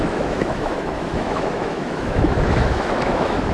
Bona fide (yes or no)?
no